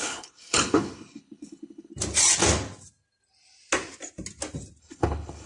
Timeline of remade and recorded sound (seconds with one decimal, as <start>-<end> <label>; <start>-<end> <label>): 0.0-1.9 remade; 1.9-4.8 recorded; 4.8-5.5 remade